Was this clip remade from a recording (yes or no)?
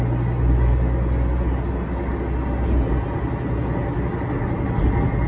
no